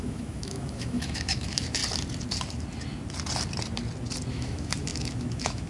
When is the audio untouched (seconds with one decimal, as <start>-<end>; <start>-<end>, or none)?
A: 1.8-4.3